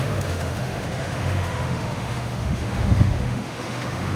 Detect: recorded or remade remade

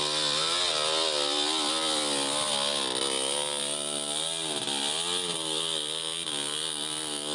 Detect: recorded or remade recorded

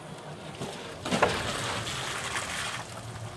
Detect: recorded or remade recorded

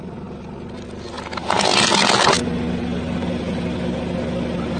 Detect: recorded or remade recorded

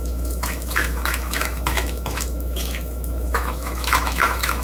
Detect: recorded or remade remade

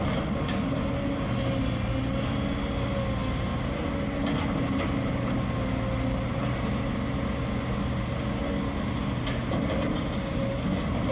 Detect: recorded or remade recorded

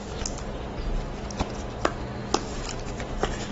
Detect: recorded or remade recorded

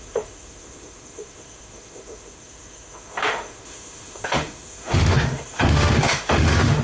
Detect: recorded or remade remade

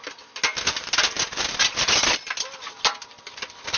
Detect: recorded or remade recorded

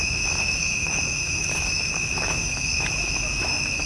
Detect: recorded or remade remade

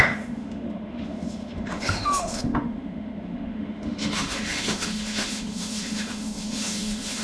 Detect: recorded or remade remade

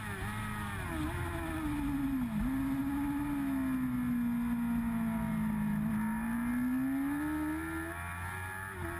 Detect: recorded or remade recorded